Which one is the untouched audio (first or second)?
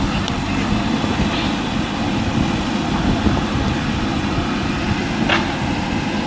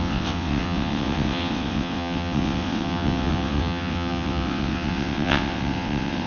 first